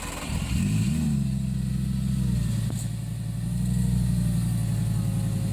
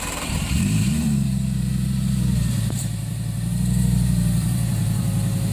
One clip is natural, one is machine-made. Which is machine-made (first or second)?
second